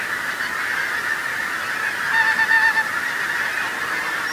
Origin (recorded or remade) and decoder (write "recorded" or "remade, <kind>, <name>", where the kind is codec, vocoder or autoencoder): recorded